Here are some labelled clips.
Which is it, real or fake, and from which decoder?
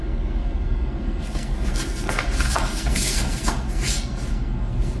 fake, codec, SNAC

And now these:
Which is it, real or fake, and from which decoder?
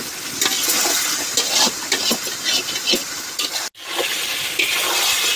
real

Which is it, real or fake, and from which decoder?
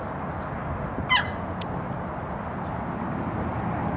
real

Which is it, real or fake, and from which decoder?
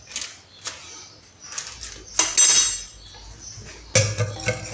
real